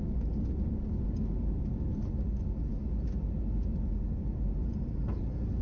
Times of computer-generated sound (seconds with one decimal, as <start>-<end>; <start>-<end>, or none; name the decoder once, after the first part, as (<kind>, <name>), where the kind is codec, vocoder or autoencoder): none